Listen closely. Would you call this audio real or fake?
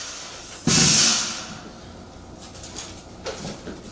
real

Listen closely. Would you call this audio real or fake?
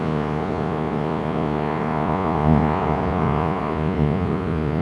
fake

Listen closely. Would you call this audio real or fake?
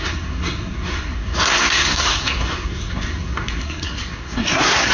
fake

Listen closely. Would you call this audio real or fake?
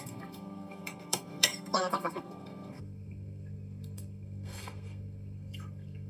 fake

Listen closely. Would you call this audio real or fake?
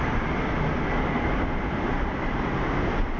real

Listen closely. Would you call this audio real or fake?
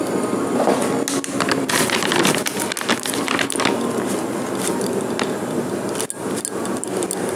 real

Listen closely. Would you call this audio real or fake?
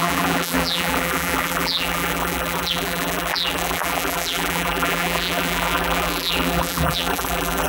fake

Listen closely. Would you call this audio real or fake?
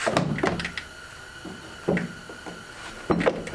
real